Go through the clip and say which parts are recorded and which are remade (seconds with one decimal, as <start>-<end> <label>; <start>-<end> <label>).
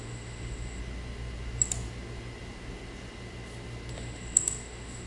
0.0-0.8 remade; 0.8-3.9 recorded; 3.9-5.1 remade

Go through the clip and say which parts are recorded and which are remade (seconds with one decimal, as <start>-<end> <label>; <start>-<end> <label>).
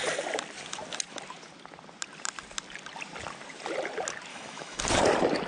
0.0-4.3 recorded; 4.3-4.8 remade; 4.8-5.5 recorded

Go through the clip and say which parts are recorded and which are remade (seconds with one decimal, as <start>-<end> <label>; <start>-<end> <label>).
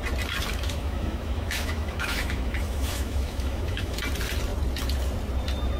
0.0-0.5 recorded; 0.5-4.0 remade; 4.0-5.8 recorded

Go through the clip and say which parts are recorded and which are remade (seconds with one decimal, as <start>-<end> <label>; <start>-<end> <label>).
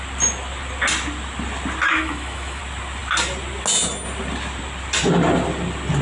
0.0-1.9 recorded; 1.9-2.6 remade; 2.6-6.0 recorded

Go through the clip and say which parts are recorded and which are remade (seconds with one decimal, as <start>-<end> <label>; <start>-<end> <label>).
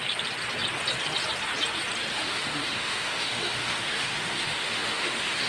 0.0-2.1 recorded; 2.1-5.5 remade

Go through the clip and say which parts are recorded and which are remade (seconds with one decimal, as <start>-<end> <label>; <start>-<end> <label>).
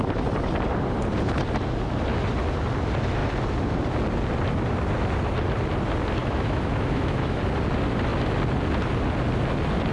0.0-6.2 recorded; 6.2-7.4 remade; 7.4-9.9 recorded